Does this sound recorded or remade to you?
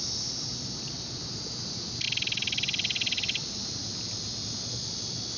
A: recorded